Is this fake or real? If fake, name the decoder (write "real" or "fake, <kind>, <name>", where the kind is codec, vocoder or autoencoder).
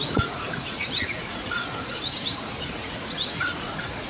fake, vocoder, Vocos